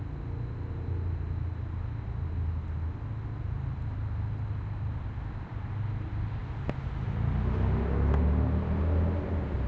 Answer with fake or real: real